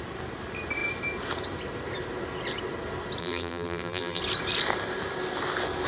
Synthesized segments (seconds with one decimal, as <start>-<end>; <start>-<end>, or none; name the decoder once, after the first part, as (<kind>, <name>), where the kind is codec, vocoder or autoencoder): 3.2-4.2 (vocoder, BigVGAN v2)